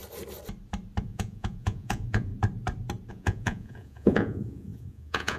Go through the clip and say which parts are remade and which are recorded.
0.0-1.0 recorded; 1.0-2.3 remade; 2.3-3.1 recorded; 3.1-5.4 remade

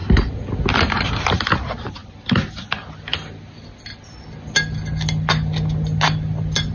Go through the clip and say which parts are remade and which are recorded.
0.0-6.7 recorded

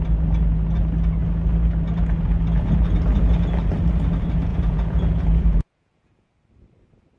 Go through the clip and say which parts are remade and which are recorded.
0.0-4.5 recorded; 4.5-6.3 remade; 6.3-7.2 recorded

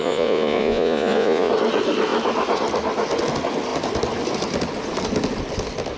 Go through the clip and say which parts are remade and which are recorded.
0.0-1.5 remade; 1.5-6.0 recorded

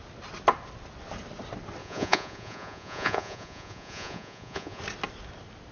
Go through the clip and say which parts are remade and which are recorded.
0.0-1.8 recorded; 1.8-4.8 remade; 4.8-5.7 recorded

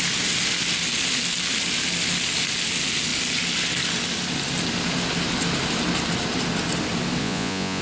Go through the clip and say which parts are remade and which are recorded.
0.0-7.2 recorded; 7.2-7.8 remade

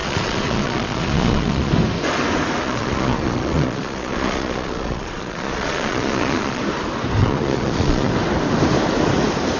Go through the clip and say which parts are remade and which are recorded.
0.0-1.7 remade; 1.7-2.6 recorded; 2.6-6.6 remade; 6.6-7.2 recorded; 7.2-8.1 remade; 8.1-9.6 recorded

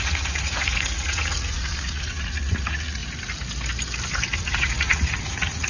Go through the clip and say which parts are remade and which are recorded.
0.0-3.0 remade; 3.0-4.5 recorded; 4.5-5.7 remade